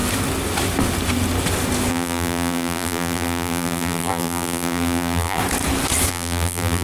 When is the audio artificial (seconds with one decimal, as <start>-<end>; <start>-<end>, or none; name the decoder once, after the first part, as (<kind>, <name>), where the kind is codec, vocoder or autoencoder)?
1.9-5.4 (vocoder, BigVGAN v2); 6.1-6.8